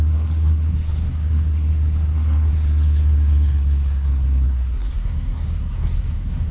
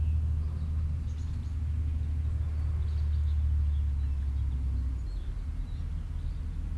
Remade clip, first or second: first